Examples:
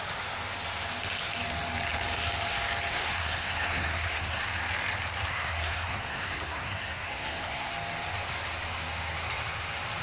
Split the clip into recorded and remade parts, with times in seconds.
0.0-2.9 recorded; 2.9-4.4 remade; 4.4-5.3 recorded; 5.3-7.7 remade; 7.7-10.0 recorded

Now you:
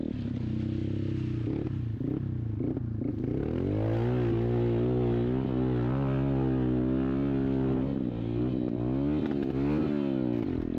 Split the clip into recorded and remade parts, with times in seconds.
0.0-10.8 recorded

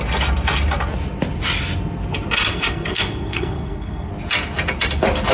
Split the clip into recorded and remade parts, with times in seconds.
0.0-2.5 recorded; 2.5-4.1 remade; 4.1-5.3 recorded

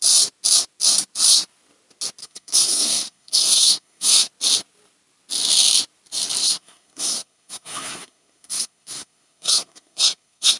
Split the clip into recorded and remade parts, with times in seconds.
0.0-2.2 recorded; 2.2-4.3 remade; 4.3-6.4 recorded; 6.4-10.6 remade

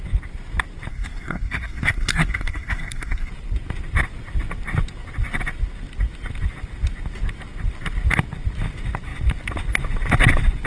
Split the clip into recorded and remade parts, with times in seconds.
0.0-0.9 recorded; 0.9-3.3 remade; 3.3-10.7 recorded

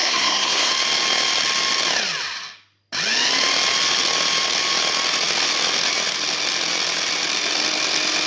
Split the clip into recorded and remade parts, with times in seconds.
0.0-0.7 remade; 0.7-8.3 recorded

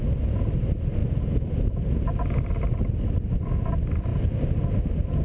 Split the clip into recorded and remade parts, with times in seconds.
0.0-5.2 recorded